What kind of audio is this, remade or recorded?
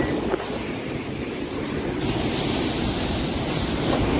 recorded